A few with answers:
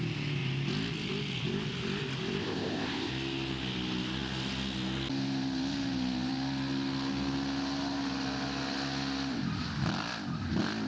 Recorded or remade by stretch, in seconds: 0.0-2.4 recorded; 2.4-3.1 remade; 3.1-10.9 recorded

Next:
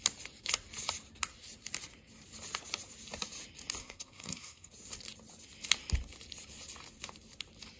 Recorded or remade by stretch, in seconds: 0.0-3.8 recorded; 3.8-4.7 remade; 4.7-7.8 recorded

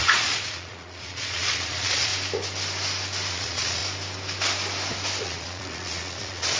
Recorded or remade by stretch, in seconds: 0.0-2.1 remade; 2.1-3.3 recorded; 3.3-3.8 remade; 3.8-5.2 recorded; 5.2-6.6 remade